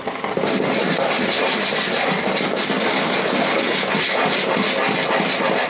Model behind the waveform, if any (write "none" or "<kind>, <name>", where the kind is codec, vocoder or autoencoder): none